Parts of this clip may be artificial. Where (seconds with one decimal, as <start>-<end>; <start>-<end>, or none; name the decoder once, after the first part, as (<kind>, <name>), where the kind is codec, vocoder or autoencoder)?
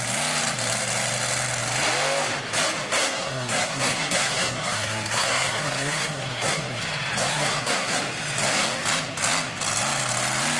3.0-6.8 (codec, SNAC); 7.3-8.0